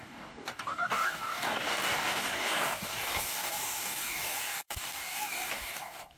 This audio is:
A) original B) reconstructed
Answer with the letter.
B